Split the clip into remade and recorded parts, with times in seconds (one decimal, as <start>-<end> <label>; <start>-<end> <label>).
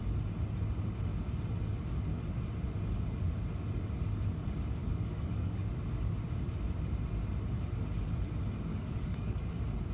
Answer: 0.0-4.8 recorded; 4.8-5.7 remade; 5.7-8.7 recorded; 8.7-9.5 remade; 9.5-9.9 recorded